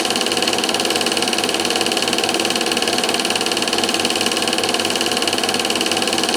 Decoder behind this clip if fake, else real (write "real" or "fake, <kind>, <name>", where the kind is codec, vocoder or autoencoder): real